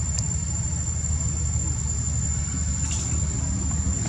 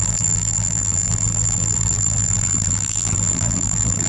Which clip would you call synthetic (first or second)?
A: second